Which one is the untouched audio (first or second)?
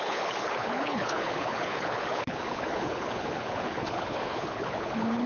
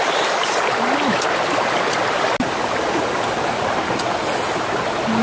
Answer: second